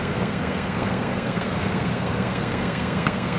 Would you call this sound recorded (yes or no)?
no